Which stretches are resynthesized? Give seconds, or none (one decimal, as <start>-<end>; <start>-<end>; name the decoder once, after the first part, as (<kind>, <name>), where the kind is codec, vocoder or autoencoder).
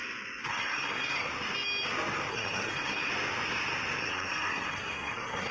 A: 0.5-1.3 (codec, SNAC); 2.3-3.1; 4.0-5.5